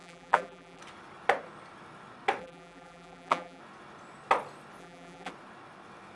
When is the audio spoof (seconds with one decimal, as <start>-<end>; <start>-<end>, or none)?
0.0-0.8; 2.4-3.6; 4.8-5.3